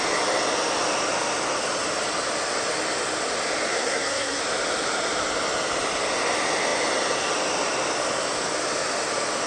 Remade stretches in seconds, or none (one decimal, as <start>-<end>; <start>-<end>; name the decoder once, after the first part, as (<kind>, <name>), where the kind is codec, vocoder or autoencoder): 3.7-4.4 (codec, SNAC)